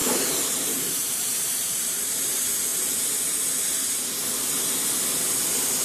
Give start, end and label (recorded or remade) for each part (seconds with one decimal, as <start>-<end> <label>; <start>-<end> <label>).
0.0-2.2 remade; 2.2-5.8 recorded